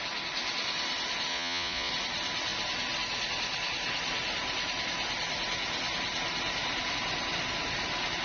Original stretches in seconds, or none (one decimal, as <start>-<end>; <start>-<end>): 0.0-1.3; 1.9-8.2